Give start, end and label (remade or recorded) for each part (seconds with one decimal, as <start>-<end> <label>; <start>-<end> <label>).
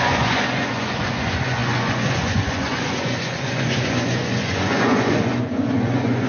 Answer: 0.0-6.3 remade